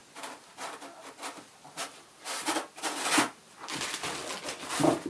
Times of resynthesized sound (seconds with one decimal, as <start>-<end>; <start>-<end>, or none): none